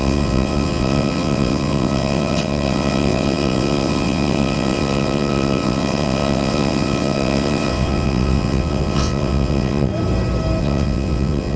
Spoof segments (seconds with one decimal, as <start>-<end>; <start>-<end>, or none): 0.0-9.9; 10.6-11.6

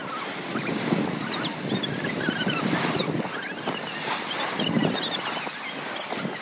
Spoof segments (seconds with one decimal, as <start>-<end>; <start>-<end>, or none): none